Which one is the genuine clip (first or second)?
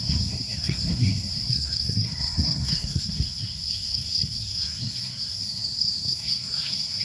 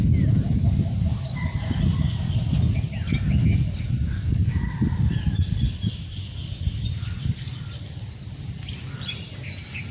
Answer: second